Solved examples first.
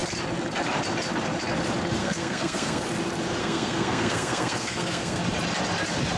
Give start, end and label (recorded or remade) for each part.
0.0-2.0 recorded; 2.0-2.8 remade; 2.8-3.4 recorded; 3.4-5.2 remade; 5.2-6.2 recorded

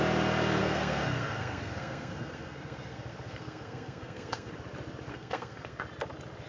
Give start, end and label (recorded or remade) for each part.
0.0-0.6 recorded; 0.6-4.5 remade; 4.5-5.1 recorded; 5.1-5.8 remade; 5.8-6.5 recorded

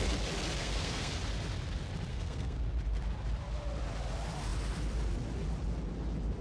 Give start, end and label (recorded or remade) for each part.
0.0-0.6 recorded; 0.6-1.1 remade; 1.1-2.1 recorded; 2.1-2.6 remade; 2.6-6.4 recorded

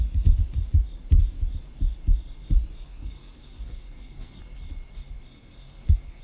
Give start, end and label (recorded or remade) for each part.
0.0-2.9 recorded; 2.9-4.4 remade; 4.4-5.3 recorded; 5.3-6.2 remade

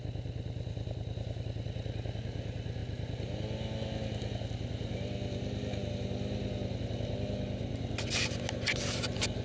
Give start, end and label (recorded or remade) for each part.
0.0-9.4 recorded

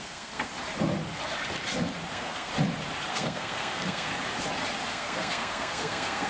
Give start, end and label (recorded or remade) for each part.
0.0-0.5 remade; 0.5-2.1 recorded; 2.1-2.5 remade; 2.5-3.1 recorded; 3.1-4.1 remade; 4.1-4.9 recorded; 4.9-6.3 remade

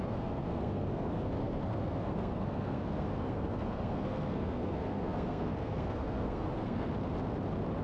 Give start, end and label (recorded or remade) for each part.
0.0-6.9 remade; 6.9-7.8 recorded

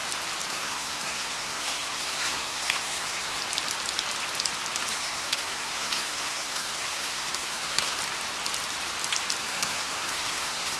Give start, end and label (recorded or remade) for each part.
0.0-0.5 recorded; 0.5-3.4 remade; 3.4-4.9 recorded; 4.9-8.0 remade; 8.0-9.4 recorded; 9.4-10.8 remade